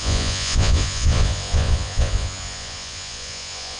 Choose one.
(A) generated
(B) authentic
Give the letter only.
A